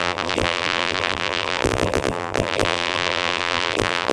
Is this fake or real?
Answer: fake